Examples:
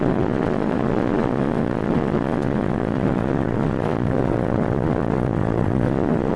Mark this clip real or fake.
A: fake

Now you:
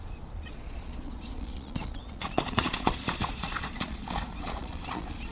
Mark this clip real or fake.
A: fake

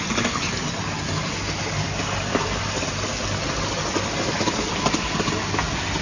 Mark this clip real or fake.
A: real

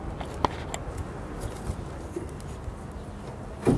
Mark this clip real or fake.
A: real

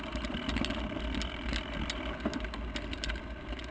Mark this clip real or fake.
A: real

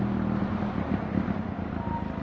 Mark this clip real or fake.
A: real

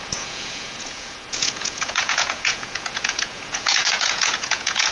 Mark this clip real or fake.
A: fake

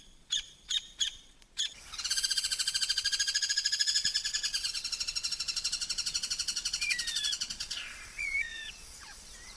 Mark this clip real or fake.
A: fake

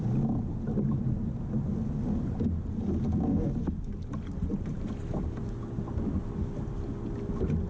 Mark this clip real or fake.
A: real